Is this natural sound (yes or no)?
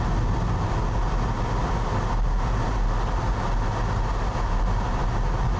yes